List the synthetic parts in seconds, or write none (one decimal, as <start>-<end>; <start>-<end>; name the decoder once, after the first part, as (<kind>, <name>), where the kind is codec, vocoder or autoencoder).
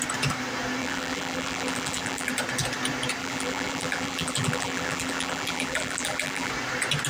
0.8-2.3 (vocoder, BigVGAN v2); 3.2-6.5